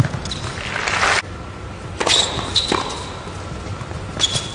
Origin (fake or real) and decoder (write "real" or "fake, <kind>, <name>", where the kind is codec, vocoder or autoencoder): real